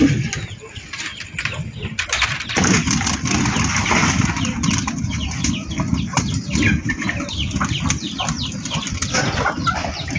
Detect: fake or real real